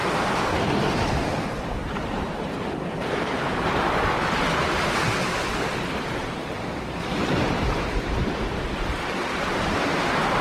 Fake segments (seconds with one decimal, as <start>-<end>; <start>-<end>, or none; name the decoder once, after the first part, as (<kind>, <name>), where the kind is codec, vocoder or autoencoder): 1.3-3.8 (vocoder, BigVGAN v2)